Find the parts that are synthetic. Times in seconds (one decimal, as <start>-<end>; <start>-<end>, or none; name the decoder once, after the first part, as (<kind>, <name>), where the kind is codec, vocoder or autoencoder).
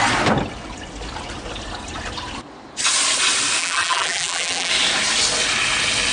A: 3.6-4.7 (vocoder, BigVGAN v2)